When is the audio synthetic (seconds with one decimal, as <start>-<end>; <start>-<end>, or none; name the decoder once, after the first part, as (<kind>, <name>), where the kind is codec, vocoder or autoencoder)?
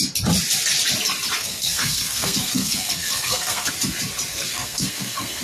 1.4-3.7 (codec, SNAC); 4.3-5.4